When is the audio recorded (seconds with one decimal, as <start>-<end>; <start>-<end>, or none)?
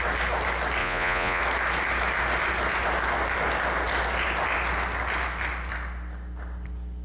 0.0-0.8; 1.4-7.0